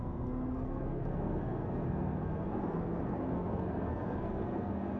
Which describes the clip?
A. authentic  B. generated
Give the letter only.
B